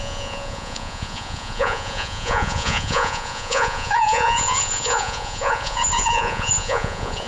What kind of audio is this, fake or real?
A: fake